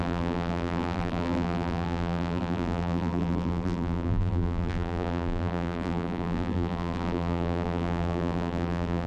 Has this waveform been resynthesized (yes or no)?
yes